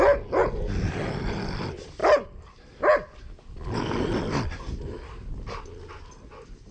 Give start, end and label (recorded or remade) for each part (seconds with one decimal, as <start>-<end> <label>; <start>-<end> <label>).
0.0-6.7 recorded